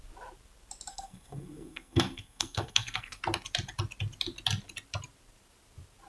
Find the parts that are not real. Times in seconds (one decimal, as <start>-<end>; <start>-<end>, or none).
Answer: 0.9-3.2